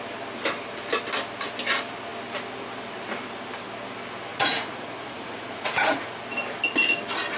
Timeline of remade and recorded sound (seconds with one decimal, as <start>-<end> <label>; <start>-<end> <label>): 0.0-4.3 recorded; 4.3-6.2 remade; 6.2-7.4 recorded